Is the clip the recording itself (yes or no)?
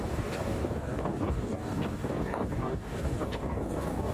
no